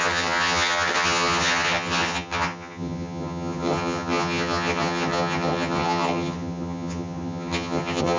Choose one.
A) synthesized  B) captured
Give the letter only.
A